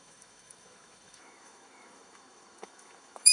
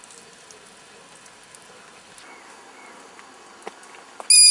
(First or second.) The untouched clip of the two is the second